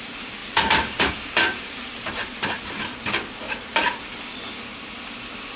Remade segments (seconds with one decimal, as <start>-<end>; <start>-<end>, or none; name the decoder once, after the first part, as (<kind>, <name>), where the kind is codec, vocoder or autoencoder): 0.4-2.6 (vocoder, BigVGAN v2)